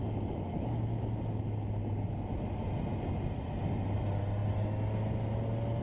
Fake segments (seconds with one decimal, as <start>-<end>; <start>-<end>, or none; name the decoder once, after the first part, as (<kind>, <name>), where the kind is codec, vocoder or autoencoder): none